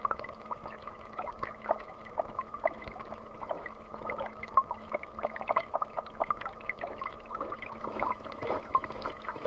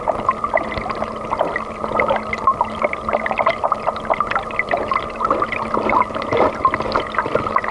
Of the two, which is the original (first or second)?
second